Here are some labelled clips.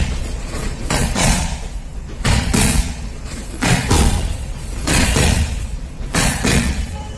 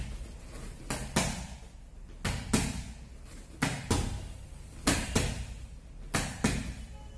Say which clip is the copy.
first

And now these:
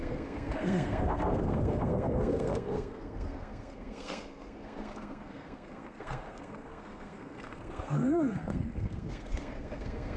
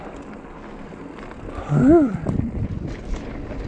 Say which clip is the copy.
first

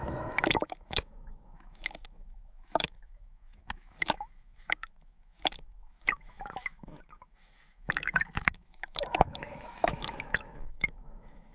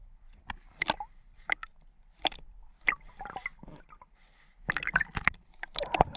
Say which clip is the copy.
first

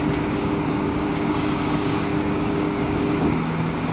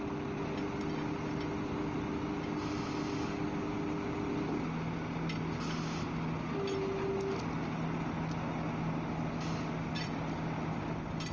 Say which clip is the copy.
first